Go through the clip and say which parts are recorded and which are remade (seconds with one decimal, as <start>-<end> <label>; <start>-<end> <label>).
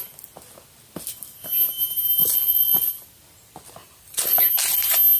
0.0-2.2 recorded; 2.2-2.9 remade; 2.9-3.8 recorded; 3.8-4.4 remade; 4.4-5.2 recorded